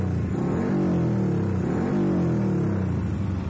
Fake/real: real